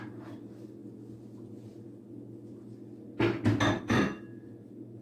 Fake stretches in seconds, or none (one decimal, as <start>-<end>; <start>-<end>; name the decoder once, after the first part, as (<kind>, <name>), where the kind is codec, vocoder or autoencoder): 0.0-0.8 (vocoder, BigVGAN v2); 3.8-5.0